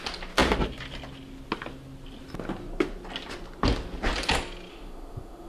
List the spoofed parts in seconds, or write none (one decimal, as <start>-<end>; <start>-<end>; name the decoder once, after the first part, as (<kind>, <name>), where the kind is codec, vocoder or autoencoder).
4.7-5.5 (autoencoder, DAC-VAE)